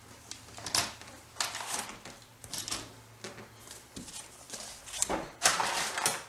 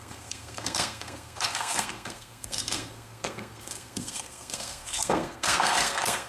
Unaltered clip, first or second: first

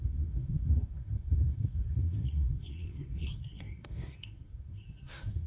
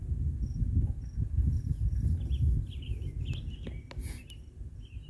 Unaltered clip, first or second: second